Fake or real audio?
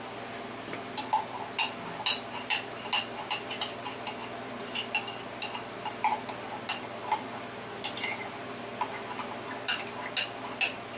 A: real